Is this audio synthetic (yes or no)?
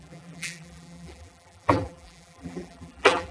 yes